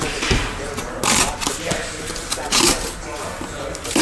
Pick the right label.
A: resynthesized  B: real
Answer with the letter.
B